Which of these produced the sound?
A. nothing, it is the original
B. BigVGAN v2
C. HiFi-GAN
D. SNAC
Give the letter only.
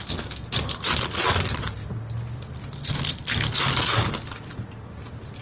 A